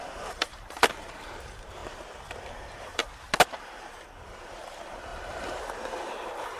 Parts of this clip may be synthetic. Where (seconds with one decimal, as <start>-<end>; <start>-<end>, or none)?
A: 0.0-1.8; 2.4-3.0; 3.5-6.6